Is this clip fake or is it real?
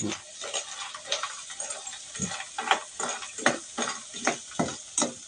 real